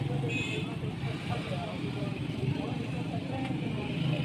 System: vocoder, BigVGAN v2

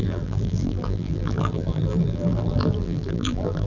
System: vocoder, BigVGAN v2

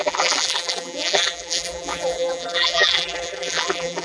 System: vocoder, BigVGAN v2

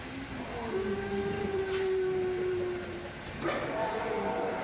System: vocoder, BigVGAN v2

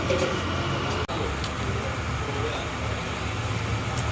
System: none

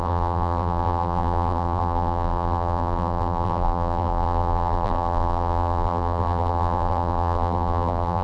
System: vocoder, BigVGAN v2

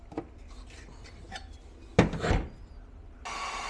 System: none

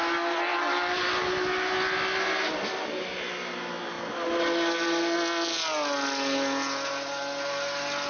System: none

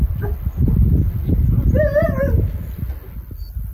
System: none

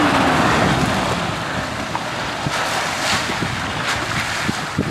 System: none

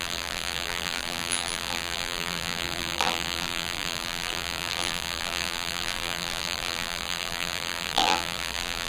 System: vocoder, BigVGAN v2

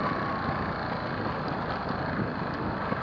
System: none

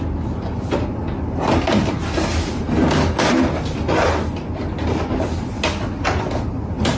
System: none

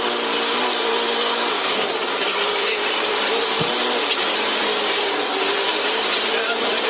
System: vocoder, BigVGAN v2